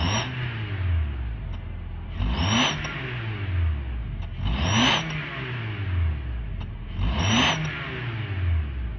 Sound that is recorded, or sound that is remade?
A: recorded